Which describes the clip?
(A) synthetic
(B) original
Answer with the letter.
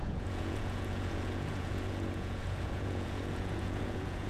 A